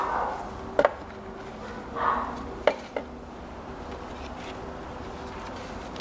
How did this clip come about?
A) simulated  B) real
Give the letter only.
B